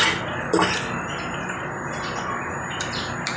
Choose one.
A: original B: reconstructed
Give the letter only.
A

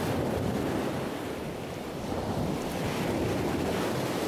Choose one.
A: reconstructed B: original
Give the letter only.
B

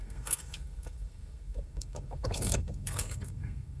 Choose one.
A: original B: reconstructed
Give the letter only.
B